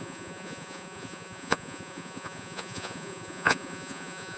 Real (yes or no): no